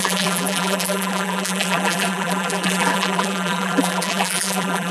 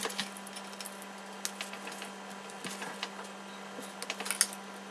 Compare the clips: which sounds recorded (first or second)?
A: second